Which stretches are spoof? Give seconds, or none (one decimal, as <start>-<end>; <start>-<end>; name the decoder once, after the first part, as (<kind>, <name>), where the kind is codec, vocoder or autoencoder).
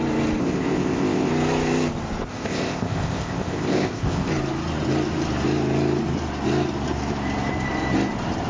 0.4-1.3 (codec, ZipCodec); 2.3-4.3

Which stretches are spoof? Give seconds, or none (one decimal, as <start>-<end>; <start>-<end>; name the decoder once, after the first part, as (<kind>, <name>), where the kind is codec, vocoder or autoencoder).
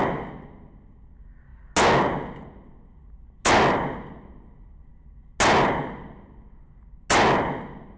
none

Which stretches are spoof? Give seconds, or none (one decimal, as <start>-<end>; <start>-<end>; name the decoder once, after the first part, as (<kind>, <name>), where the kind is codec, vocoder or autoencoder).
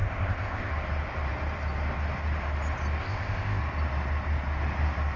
0.0-0.7 (codec, ZipCodec); 3.0-3.6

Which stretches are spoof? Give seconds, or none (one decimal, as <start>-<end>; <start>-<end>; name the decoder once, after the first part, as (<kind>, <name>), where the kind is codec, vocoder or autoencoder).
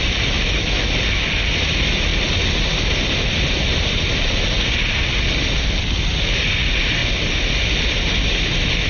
none